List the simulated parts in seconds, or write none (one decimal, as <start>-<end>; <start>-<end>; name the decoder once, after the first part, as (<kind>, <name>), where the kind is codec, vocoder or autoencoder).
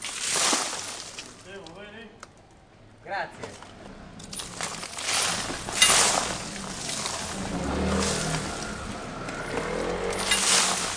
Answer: none